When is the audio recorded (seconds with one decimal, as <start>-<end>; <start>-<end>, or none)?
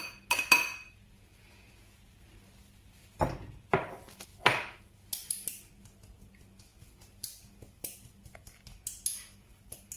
0.0-4.3; 4.8-10.0